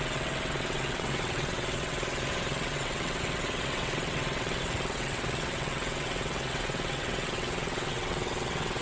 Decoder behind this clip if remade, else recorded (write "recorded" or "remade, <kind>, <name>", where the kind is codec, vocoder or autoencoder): remade, vocoder, WaveNeXt